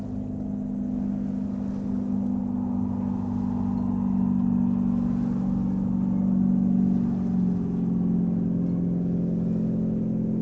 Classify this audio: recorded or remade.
recorded